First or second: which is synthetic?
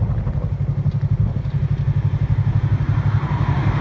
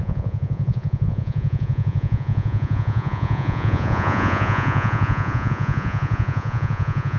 second